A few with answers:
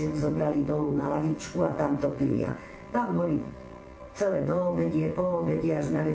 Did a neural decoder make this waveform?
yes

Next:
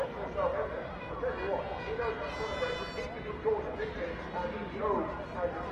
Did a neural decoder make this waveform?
no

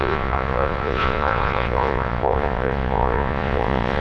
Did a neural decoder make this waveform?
yes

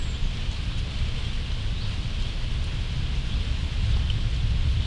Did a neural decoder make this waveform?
no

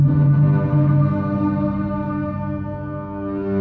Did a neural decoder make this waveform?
no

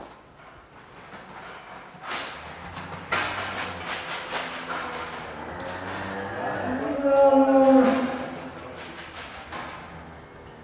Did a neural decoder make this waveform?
no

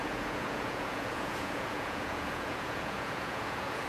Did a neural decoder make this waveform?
yes